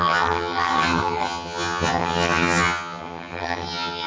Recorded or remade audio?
remade